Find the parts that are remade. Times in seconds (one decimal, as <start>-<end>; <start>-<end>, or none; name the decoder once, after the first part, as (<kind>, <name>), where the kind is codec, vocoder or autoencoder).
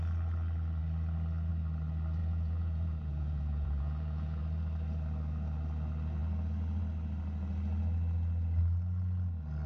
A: 2.2-4.4 (vocoder, Vocos)